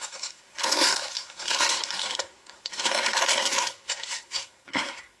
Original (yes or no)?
no